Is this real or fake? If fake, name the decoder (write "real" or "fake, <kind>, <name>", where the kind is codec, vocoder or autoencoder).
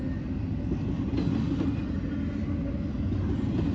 real